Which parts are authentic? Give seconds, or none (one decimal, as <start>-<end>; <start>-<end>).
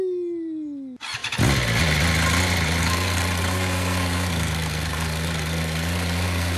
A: 0.0-2.8